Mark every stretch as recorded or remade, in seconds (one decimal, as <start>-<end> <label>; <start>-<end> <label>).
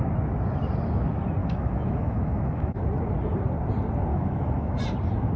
0.0-1.4 recorded; 1.4-2.8 remade; 2.8-4.1 recorded; 4.1-4.8 remade; 4.8-5.4 recorded